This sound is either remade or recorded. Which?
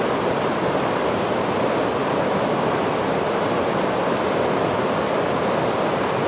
recorded